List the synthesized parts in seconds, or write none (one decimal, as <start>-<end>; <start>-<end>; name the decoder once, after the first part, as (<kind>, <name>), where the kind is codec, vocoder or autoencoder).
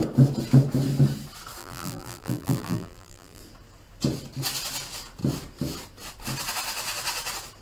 1.6-3.4 (vocoder, BigVGAN v2)